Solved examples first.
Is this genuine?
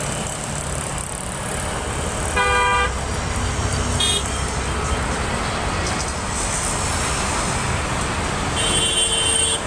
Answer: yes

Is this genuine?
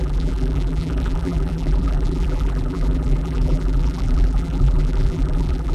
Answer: no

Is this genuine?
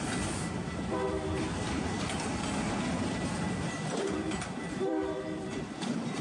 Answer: no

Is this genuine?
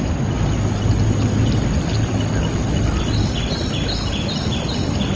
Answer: yes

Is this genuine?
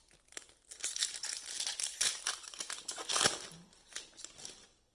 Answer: yes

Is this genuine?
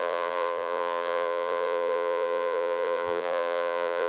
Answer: no